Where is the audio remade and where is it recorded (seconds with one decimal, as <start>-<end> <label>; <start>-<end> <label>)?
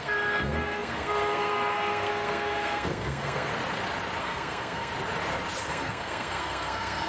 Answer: 0.0-3.5 remade; 3.5-4.2 recorded; 4.2-4.9 remade; 4.9-5.7 recorded; 5.7-7.1 remade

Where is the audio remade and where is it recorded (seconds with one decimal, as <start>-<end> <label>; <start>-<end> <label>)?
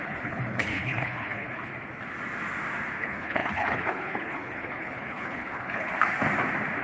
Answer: 0.0-1.7 remade; 1.7-3.0 recorded; 3.0-5.9 remade; 5.9-6.8 recorded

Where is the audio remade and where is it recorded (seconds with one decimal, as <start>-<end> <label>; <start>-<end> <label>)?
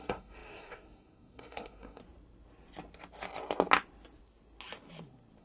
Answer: 0.0-2.0 remade; 2.0-5.4 recorded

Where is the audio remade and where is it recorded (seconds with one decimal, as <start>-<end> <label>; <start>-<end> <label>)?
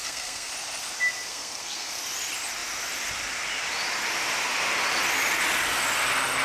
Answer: 0.0-0.5 remade; 0.5-1.3 recorded; 1.3-2.0 remade; 2.0-6.4 recorded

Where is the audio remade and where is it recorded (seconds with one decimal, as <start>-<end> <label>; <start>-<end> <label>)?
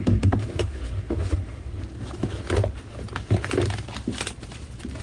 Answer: 0.0-1.8 remade; 1.8-5.0 recorded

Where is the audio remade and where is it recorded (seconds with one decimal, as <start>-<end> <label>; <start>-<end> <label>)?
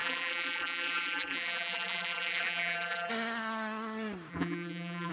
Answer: 0.0-3.1 remade; 3.1-4.3 recorded; 4.3-5.1 remade